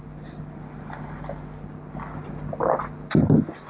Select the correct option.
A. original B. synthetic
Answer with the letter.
A